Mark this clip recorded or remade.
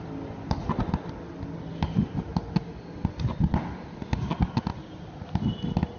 recorded